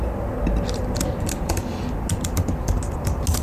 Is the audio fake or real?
real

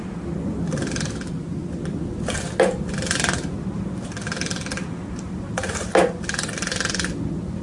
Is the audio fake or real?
real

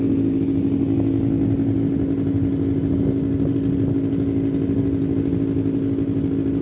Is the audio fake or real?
real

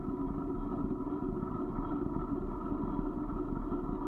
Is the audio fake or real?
real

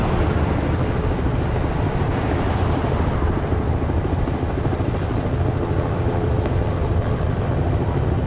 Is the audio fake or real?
real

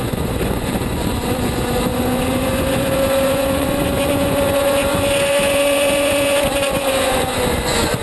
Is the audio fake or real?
fake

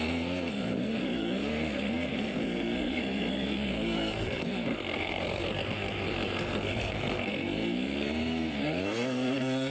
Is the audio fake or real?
fake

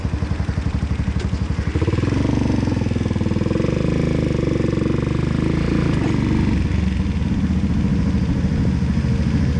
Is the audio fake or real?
real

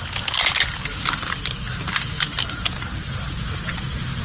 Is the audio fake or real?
real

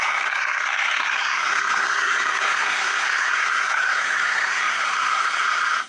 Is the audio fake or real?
fake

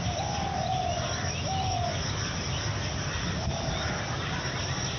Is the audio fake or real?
real